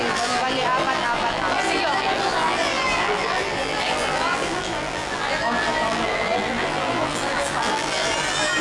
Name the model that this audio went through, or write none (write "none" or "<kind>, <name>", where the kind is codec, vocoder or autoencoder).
vocoder, BigVGAN v2